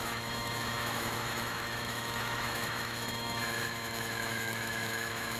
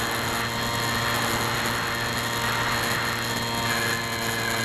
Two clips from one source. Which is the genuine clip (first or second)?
second